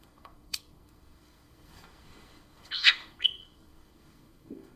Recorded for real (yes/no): no